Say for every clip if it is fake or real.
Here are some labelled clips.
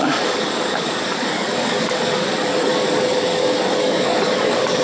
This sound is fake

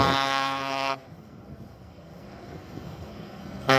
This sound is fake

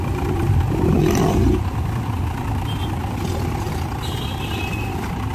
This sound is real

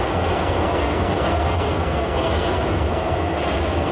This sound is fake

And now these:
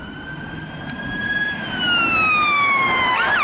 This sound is fake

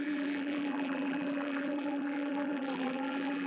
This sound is fake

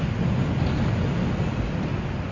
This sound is real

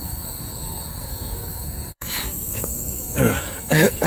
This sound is fake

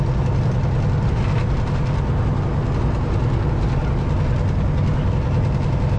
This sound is real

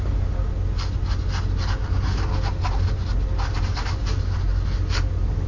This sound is real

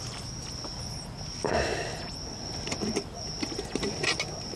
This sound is real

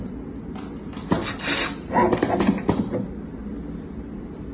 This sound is real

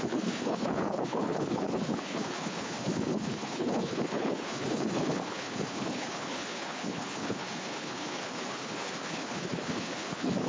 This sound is fake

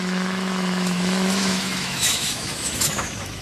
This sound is fake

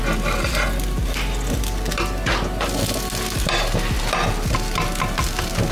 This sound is real